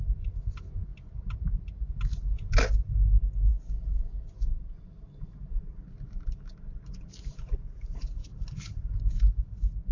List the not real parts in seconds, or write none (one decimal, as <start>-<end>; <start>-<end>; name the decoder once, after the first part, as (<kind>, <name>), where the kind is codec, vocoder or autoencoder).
none